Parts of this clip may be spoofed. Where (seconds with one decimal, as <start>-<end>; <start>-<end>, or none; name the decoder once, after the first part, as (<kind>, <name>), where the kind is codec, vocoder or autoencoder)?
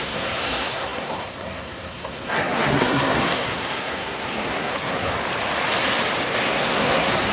0.0-5.1 (codec, SNAC); 6.4-7.3